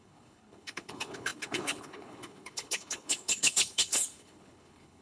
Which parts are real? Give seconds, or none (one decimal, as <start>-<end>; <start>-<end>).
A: none